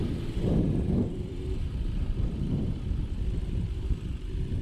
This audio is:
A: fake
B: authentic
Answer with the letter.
A